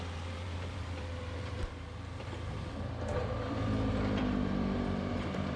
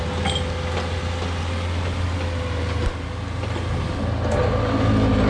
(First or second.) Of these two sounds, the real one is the second